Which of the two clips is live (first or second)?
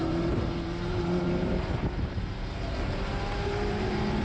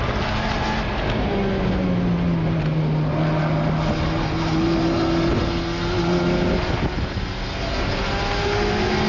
second